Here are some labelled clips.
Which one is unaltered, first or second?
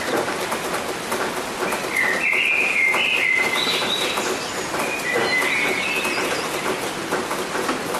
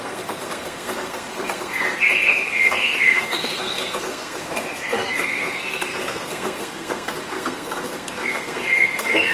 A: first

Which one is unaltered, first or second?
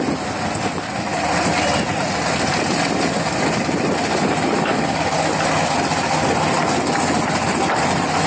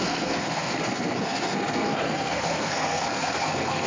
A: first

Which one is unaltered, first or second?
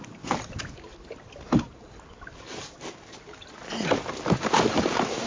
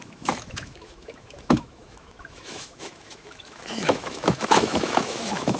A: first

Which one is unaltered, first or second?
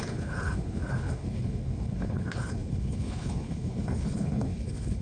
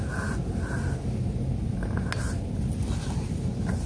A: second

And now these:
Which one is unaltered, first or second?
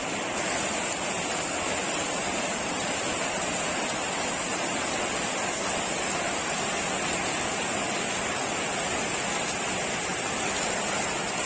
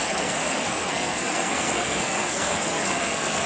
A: first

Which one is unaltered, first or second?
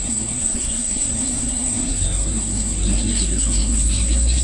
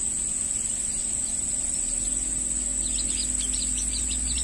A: second